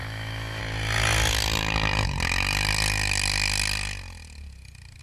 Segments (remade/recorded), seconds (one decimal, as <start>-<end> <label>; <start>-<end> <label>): 0.0-0.6 remade; 0.6-5.0 recorded